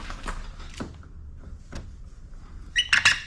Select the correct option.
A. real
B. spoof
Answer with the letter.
A